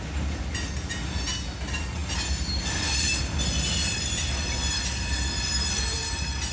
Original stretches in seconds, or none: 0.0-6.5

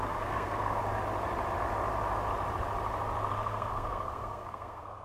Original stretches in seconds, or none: 0.8-3.3

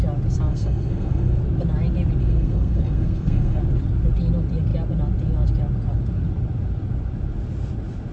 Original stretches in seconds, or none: 0.0-0.5; 1.4-2.2; 3.6-8.1

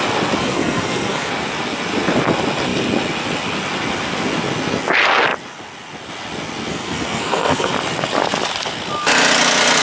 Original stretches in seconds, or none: 0.0-0.4; 1.3-6.7; 7.7-9.8

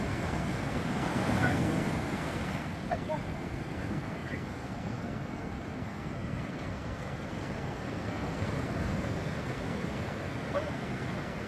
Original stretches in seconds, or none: none